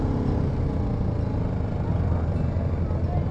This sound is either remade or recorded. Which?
recorded